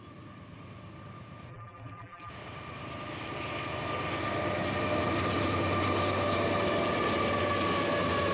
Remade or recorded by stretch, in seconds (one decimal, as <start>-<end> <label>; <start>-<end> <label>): 0.0-1.5 recorded; 1.5-2.3 remade; 2.3-8.3 recorded